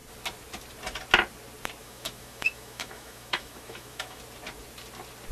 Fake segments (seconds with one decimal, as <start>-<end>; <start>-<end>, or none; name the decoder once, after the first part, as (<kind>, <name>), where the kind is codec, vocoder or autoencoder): 1.8-4.2 (autoencoder, DAC-VAE)